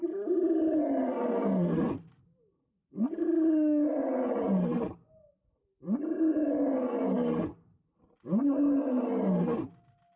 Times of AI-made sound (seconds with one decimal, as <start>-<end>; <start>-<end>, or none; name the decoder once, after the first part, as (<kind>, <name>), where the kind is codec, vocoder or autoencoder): none